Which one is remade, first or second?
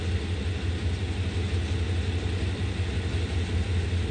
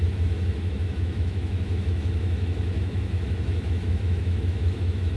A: second